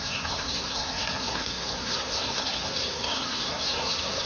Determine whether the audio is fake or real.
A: fake